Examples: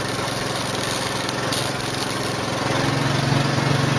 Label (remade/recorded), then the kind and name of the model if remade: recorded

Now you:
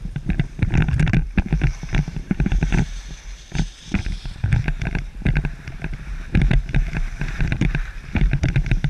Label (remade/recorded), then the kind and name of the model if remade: remade, vocoder, BigVGAN v2